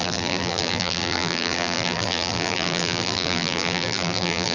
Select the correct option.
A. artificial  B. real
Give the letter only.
A